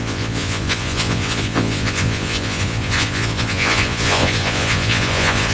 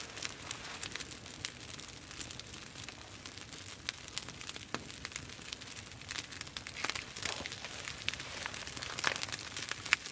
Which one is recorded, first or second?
second